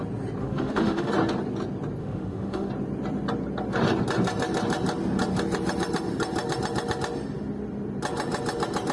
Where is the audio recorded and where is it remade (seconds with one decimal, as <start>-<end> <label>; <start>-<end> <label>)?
0.0-0.4 recorded; 0.4-1.1 remade; 1.1-2.0 recorded; 2.0-2.7 remade; 2.7-8.9 recorded